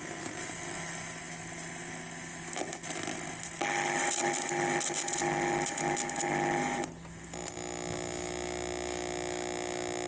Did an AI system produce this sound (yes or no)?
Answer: no